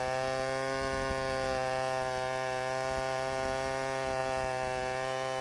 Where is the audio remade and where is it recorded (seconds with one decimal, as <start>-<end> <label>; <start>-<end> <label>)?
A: 0.0-5.4 recorded